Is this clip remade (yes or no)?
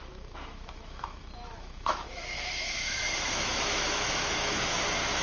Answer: yes